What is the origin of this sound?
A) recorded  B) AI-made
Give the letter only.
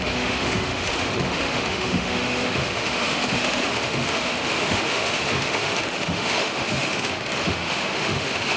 B